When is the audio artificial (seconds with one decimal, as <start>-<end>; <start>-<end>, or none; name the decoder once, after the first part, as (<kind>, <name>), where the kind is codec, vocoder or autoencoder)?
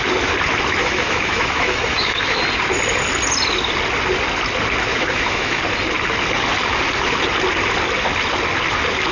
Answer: 0.8-2.4 (autoencoder, DAC-VAE); 4.9-5.6